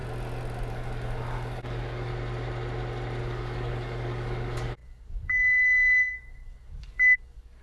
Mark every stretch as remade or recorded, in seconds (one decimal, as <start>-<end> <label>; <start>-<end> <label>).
0.0-0.7 recorded; 0.7-2.1 remade; 2.1-3.2 recorded; 3.2-7.6 remade